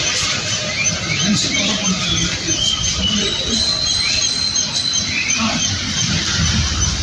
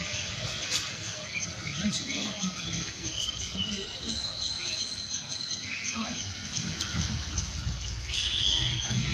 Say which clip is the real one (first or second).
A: first